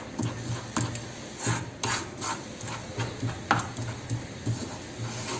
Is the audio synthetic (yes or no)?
no